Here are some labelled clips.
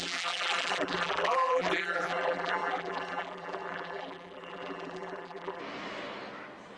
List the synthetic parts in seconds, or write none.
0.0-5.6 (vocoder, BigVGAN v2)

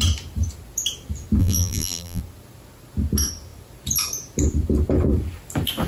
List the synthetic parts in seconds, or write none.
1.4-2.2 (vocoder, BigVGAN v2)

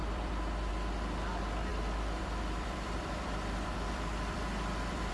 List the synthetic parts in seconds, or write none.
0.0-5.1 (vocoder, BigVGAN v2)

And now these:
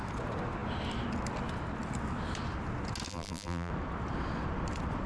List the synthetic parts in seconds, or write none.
3.1-3.7 (vocoder, BigVGAN v2)